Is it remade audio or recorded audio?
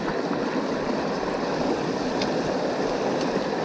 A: remade